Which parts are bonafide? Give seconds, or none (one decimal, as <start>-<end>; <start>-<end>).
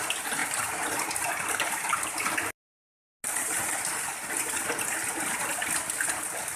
0.0-6.6